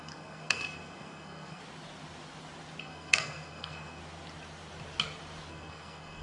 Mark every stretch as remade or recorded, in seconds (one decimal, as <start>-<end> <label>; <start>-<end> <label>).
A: 0.0-1.6 remade; 1.6-2.8 recorded; 2.8-4.0 remade; 4.0-5.5 recorded; 5.5-6.2 remade